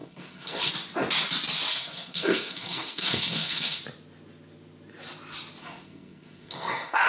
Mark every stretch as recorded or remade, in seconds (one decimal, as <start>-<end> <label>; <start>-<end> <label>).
0.0-0.7 remade; 0.7-1.7 recorded; 1.7-3.8 remade; 3.8-5.6 recorded; 5.6-7.1 remade